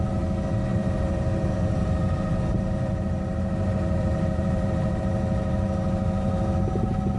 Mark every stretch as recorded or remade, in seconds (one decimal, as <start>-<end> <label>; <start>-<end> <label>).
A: 0.0-0.7 recorded; 0.7-5.0 remade; 5.0-7.2 recorded